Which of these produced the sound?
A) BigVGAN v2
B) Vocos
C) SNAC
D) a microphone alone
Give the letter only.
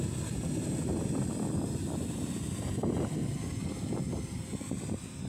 D